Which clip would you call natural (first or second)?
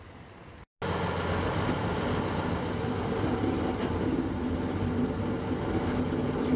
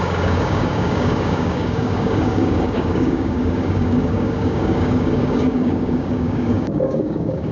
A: first